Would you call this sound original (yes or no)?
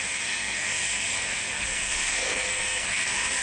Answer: no